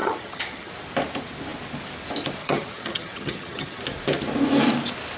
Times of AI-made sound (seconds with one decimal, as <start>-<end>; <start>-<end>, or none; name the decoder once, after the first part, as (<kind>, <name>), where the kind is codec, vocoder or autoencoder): 0.0-0.7 (vocoder, HiFi-GAN); 2.4-3.8